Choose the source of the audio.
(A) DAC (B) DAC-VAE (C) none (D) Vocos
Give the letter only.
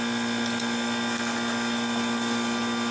C